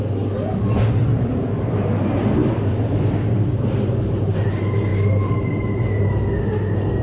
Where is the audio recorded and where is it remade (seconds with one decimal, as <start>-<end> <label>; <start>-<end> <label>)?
0.0-1.1 recorded; 1.1-3.5 remade; 3.5-4.9 recorded; 4.9-6.0 remade; 6.0-7.0 recorded